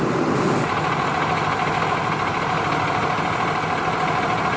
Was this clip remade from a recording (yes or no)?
no